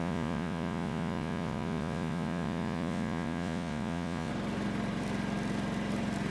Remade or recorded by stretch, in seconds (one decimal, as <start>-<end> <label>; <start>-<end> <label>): 0.0-4.3 remade; 4.3-6.3 recorded

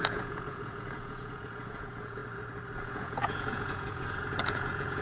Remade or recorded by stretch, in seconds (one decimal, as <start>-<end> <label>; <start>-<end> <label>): 0.0-2.2 remade; 2.2-2.8 recorded; 2.8-5.0 remade

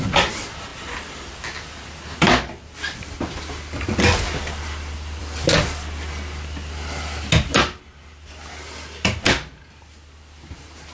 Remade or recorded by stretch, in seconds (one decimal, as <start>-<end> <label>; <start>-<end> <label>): 0.0-10.9 recorded

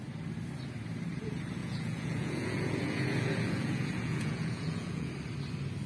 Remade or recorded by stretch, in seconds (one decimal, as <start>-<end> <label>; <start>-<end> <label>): 0.0-1.6 recorded; 1.6-5.1 remade; 5.1-5.9 recorded

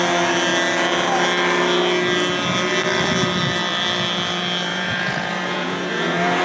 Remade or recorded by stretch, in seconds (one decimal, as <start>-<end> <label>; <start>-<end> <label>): 0.0-4.7 recorded; 4.7-6.4 remade

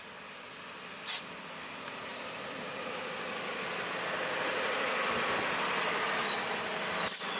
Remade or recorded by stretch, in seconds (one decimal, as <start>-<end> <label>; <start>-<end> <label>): 0.0-7.4 recorded

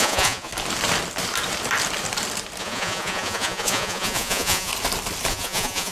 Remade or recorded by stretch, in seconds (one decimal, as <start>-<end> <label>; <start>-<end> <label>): 0.0-0.5 remade; 0.5-2.6 recorded; 2.6-4.7 remade; 4.7-5.3 recorded; 5.3-5.9 remade

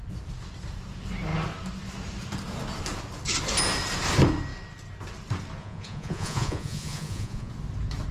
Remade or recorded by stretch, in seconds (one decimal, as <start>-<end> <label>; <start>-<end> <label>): 0.0-5.6 recorded; 5.6-7.5 remade; 7.5-8.1 recorded